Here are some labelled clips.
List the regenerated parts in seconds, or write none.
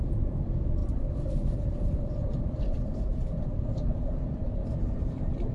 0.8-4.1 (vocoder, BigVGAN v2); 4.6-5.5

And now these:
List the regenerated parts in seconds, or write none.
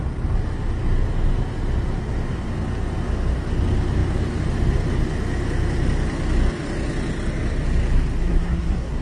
8.2-9.0 (codec, SNAC)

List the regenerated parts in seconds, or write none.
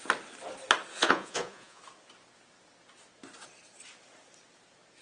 0.9-1.8 (vocoder, Vocos)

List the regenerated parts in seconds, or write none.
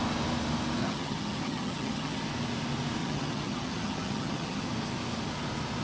0.8-2.2 (vocoder, HiFi-GAN); 3.0-4.6